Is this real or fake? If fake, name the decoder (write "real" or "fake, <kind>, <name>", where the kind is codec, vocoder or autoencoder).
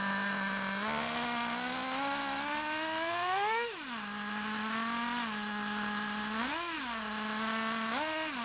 real